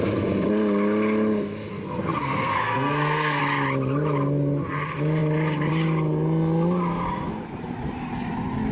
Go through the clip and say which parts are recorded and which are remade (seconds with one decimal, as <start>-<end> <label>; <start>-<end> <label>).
0.0-1.7 recorded; 1.7-3.4 remade; 3.4-8.7 recorded